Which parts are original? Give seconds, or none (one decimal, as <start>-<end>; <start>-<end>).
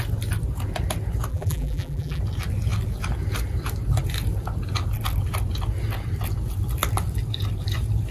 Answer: 0.0-1.3; 2.2-8.1